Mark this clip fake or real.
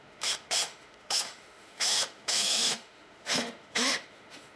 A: fake